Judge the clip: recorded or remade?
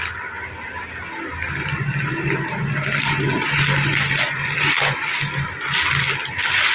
recorded